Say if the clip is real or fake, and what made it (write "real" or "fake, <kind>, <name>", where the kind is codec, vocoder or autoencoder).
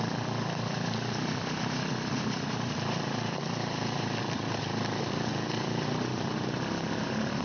real